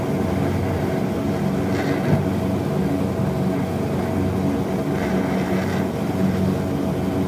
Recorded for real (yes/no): yes